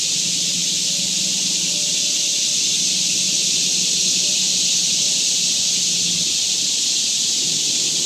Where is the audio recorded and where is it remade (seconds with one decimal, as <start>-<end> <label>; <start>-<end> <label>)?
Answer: 0.0-8.1 recorded